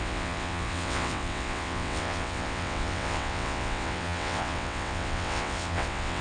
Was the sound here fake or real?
fake